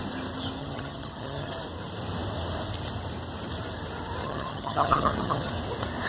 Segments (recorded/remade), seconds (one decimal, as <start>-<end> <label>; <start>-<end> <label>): 0.0-0.6 recorded; 0.6-1.5 remade; 1.5-4.2 recorded; 4.2-5.5 remade; 5.5-6.1 recorded